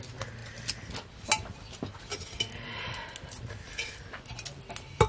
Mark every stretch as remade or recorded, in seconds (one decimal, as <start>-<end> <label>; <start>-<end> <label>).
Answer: 0.0-5.1 recorded